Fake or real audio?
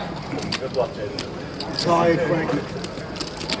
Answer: real